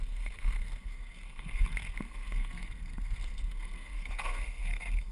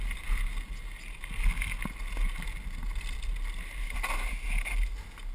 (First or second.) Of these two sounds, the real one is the second